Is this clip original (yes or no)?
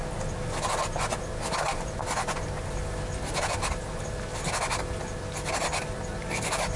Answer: yes